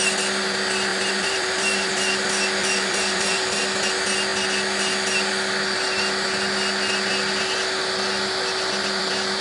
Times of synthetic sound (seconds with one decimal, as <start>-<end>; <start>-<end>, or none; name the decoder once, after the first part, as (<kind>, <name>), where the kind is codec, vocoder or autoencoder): 0.9-1.9 (vocoder, BigVGAN v2); 2.6-3.6

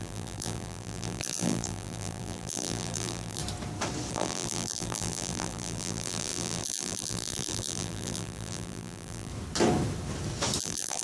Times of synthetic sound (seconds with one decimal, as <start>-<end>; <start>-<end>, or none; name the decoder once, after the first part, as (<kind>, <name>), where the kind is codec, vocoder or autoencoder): 0.0-3.4 (vocoder, BigVGAN v2); 4.1-9.3; 10.6-11.0

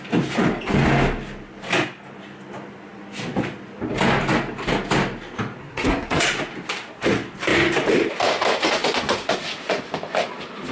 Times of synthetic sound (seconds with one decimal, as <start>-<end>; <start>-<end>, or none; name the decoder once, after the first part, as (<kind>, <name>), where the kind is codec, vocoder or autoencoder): 5.6-6.2 (codec, SNAC)

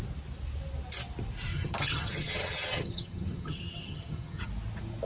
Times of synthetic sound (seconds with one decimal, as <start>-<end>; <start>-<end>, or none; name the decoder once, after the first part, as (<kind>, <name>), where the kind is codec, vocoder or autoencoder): 1.5-4.5 (vocoder, HiFi-GAN)

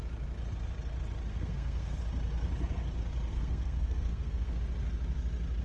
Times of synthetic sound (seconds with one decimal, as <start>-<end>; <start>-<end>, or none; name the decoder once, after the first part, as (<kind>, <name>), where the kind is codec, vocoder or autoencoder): 1.3-2.0 (codec, SNAC); 3.3-4.6